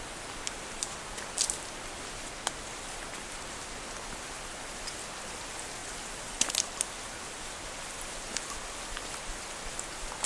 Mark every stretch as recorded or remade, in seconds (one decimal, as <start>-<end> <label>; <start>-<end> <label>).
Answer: 0.0-10.3 recorded